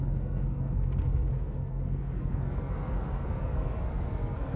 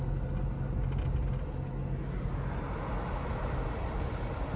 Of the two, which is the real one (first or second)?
second